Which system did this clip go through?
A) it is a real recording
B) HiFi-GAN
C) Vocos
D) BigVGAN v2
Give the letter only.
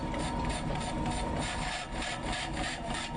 D